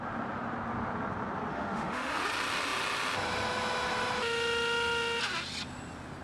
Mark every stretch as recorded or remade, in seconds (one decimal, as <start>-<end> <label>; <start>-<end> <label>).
0.0-1.5 recorded; 1.5-2.2 remade; 2.2-6.2 recorded